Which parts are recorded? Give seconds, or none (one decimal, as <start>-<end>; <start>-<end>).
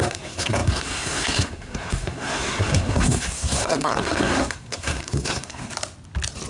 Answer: 5.7-6.5